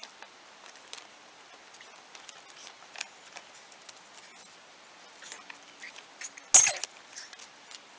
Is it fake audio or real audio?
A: real